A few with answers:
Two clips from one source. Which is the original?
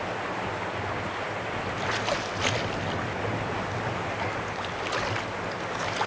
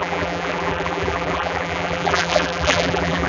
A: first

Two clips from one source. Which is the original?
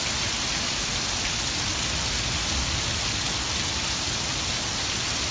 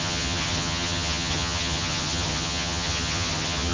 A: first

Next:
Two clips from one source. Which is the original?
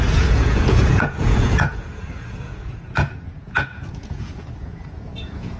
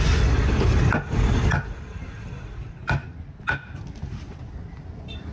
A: second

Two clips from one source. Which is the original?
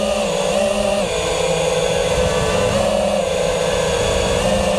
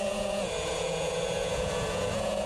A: first